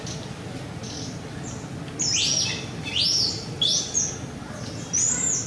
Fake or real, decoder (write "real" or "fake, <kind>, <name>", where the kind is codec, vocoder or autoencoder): real